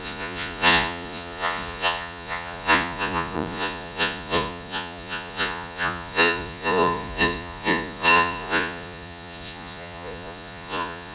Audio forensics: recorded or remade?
remade